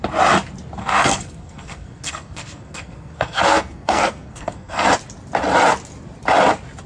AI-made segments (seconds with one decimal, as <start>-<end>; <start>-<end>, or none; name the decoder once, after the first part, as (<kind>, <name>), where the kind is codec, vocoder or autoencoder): 0.8-4.9 (codec, SNAC)